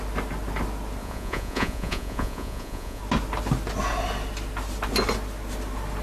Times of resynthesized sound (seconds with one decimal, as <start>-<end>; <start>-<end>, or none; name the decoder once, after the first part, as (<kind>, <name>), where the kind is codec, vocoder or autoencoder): 1.0-3.0 (vocoder, Vocos)